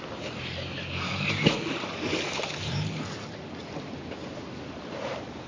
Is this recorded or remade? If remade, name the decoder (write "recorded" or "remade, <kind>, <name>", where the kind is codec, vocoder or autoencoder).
recorded